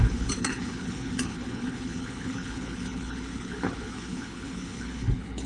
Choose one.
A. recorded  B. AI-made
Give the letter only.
B